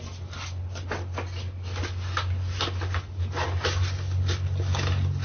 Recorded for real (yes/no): yes